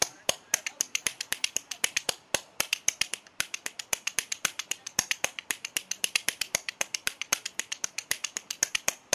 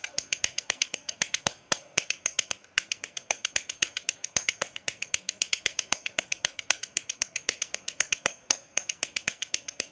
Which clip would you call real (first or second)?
first